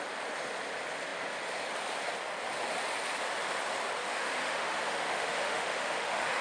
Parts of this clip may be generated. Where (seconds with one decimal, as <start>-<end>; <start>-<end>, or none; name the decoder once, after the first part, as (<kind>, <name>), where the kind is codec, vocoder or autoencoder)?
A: 4.0-6.4 (autoencoder, DAC-VAE)